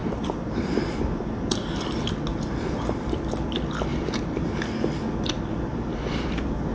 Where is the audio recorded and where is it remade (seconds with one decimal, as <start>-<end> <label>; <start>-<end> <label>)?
0.0-1.0 remade; 1.0-2.3 recorded; 2.3-3.3 remade; 3.3-3.9 recorded; 3.9-4.4 remade; 4.4-6.7 recorded